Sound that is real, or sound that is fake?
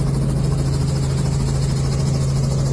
real